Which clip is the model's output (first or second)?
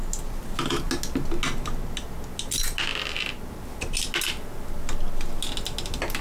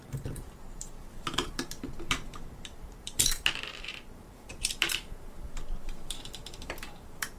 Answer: second